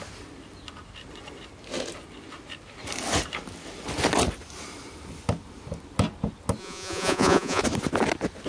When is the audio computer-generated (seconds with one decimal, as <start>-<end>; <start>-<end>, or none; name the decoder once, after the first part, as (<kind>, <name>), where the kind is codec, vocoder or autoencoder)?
6.6-7.6 (vocoder, Vocos)